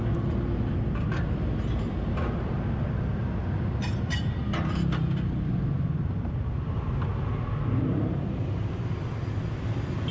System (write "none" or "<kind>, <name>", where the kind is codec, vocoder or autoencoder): none